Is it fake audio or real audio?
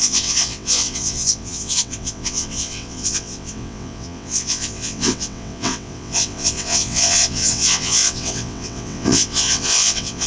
fake